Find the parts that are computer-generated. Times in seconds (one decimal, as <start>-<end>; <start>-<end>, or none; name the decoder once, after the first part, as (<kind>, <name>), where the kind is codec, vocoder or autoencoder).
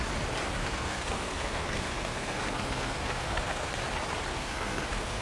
0.6-3.7 (codec, SNAC); 4.3-5.2